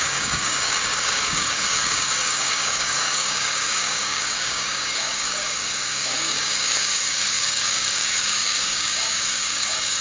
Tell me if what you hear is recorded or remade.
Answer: remade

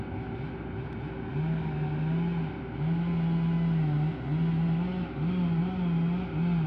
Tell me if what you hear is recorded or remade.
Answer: recorded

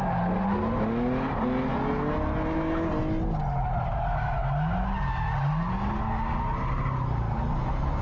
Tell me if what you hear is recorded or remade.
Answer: recorded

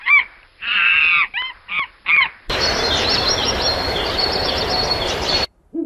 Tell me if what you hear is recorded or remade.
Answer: remade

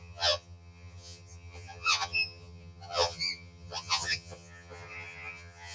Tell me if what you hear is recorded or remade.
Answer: remade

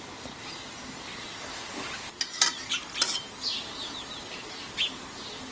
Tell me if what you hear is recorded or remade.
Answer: recorded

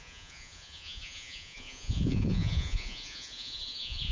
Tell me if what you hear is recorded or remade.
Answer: remade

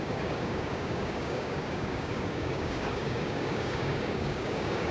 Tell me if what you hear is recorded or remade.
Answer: remade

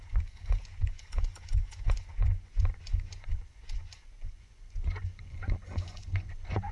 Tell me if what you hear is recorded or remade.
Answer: remade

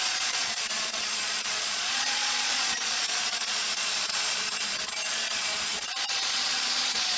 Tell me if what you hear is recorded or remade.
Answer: remade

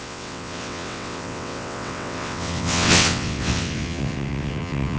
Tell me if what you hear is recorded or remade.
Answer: remade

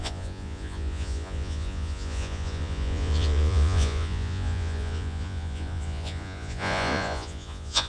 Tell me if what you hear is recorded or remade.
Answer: remade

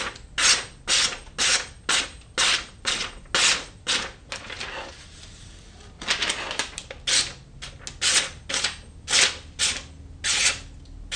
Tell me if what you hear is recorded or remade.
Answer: recorded